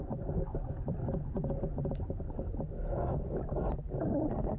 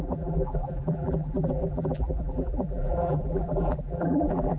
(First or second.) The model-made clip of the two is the second